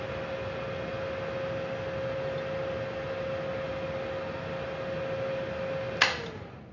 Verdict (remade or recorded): recorded